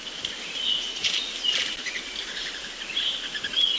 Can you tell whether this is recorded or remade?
recorded